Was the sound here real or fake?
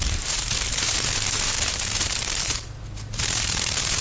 fake